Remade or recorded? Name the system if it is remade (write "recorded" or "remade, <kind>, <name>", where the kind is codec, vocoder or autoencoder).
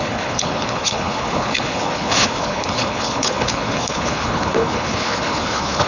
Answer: remade, codec, HILCodec